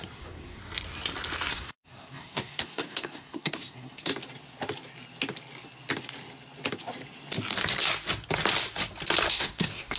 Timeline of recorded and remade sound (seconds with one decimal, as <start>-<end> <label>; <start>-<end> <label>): 0.0-0.6 remade; 0.6-1.5 recorded; 1.5-4.1 remade; 4.1-9.3 recorded; 9.3-10.0 remade